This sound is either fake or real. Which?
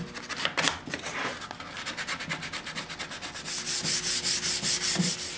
real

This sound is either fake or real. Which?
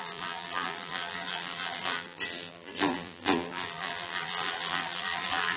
fake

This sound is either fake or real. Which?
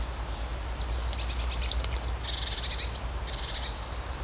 real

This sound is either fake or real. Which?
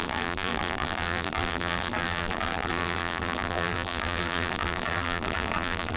fake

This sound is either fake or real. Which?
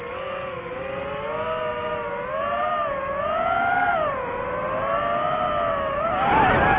real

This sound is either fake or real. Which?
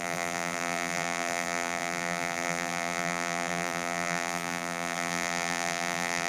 fake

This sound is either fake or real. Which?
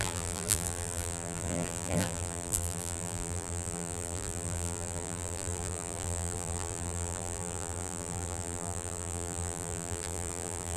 fake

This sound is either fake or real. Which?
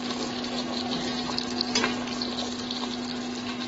real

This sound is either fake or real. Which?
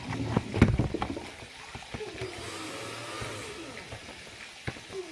real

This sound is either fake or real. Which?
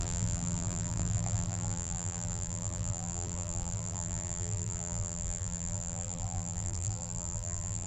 fake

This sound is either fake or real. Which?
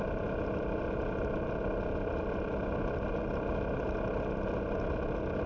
real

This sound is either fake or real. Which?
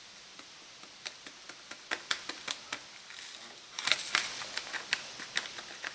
real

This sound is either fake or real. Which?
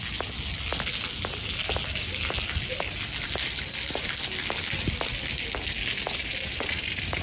real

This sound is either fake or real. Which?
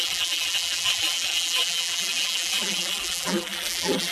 fake